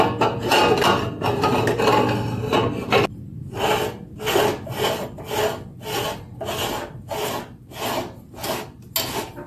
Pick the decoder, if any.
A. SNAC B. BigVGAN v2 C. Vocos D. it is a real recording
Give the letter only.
D